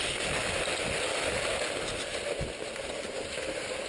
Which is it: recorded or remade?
recorded